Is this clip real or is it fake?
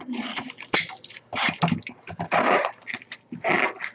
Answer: real